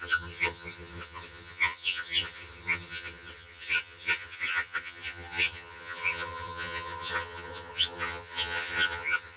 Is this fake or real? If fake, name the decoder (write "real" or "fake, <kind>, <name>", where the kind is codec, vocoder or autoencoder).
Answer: fake, vocoder, HiFi-GAN